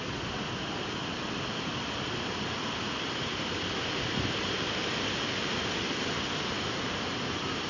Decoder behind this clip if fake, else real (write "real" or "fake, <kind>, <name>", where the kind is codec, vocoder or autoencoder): real